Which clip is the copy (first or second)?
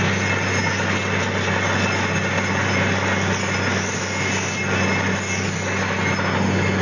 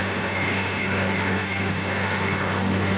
second